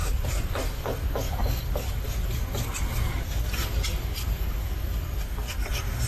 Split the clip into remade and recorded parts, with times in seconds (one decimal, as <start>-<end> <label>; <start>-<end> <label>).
0.0-6.1 remade